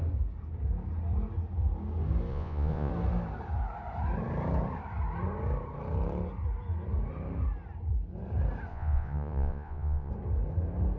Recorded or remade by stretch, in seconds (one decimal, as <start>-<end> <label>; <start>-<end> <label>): 0.0-2.3 recorded; 2.3-2.9 remade; 2.9-8.7 recorded; 8.7-10.1 remade; 10.1-11.0 recorded